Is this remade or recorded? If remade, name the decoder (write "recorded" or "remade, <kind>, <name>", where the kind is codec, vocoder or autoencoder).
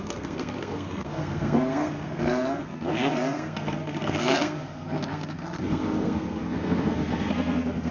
remade, codec, SNAC